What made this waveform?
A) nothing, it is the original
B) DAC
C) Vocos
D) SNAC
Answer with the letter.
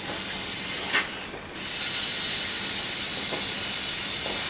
A